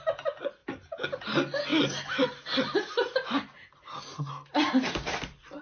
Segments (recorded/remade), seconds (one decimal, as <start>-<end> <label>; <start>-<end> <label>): 0.0-5.6 recorded